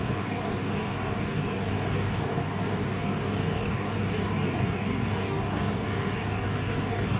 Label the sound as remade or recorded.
remade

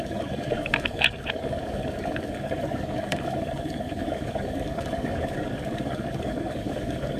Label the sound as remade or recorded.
remade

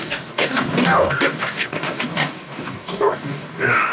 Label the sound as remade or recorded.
remade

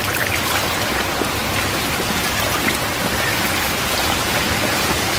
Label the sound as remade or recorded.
recorded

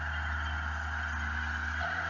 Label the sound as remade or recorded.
recorded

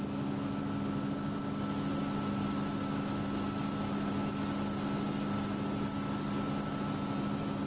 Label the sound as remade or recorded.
recorded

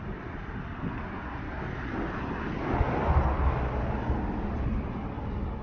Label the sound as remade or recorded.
recorded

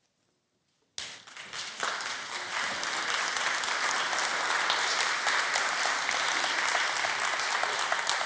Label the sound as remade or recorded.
recorded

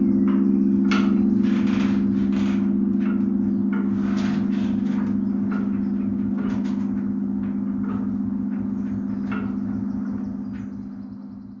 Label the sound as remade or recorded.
recorded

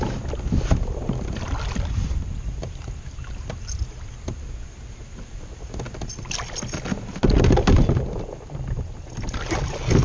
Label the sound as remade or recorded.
recorded